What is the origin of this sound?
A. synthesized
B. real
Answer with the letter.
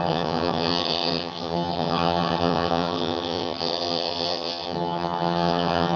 A